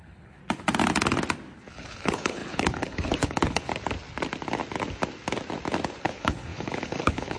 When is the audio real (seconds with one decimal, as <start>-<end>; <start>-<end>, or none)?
0.4-1.7; 3.7-6.0